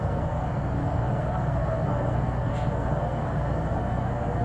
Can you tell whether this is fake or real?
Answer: fake